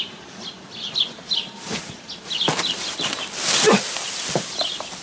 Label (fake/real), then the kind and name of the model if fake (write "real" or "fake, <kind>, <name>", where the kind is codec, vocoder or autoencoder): real